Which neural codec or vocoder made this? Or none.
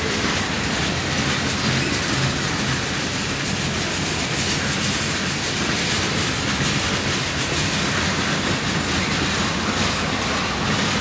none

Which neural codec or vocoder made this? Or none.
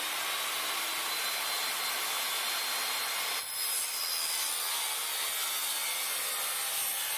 none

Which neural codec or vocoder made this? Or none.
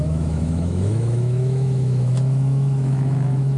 autoencoder, DAC-VAE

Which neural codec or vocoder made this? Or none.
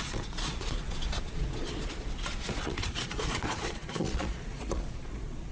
vocoder, Vocos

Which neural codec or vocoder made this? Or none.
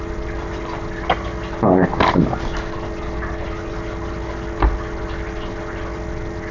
none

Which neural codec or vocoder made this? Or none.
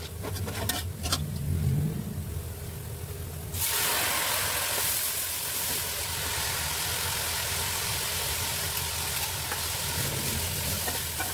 none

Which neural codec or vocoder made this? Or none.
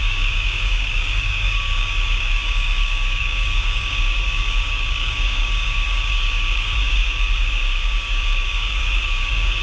codec, DAC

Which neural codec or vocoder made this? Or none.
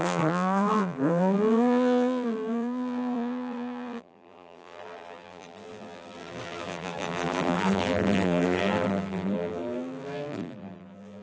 vocoder, BigVGAN v2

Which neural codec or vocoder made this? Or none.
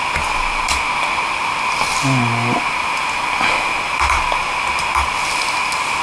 none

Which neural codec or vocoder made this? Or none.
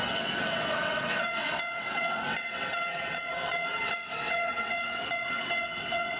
vocoder, WaveNeXt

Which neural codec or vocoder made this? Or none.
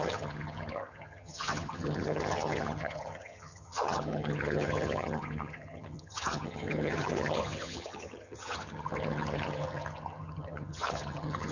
vocoder, HiFi-GAN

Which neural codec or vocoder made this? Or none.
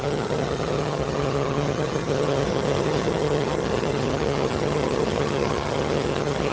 vocoder, HiFi-GAN